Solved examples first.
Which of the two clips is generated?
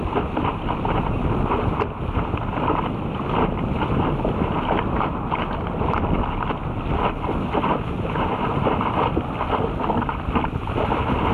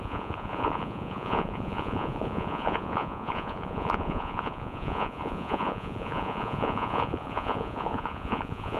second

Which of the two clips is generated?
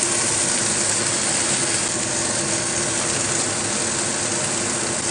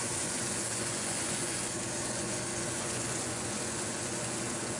second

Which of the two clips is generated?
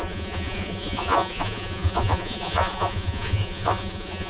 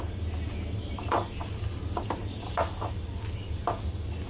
first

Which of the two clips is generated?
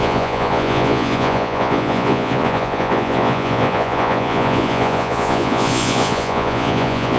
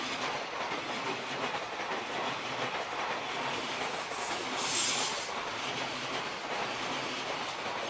first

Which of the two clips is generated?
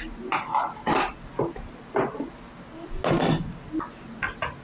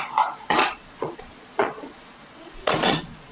second